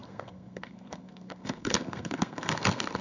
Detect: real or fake fake